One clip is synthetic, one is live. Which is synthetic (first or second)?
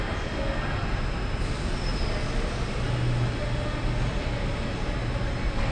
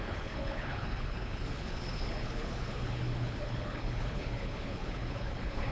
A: second